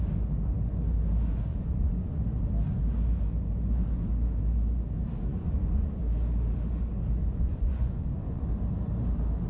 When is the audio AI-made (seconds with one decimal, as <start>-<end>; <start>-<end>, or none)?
1.5-2.2; 5.3-6.0; 7.2-8.5